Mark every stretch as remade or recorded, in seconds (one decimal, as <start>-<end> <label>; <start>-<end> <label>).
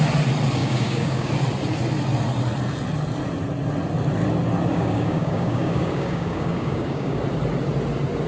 0.0-0.6 recorded; 0.6-1.3 remade; 1.3-4.7 recorded; 4.7-7.2 remade; 7.2-8.3 recorded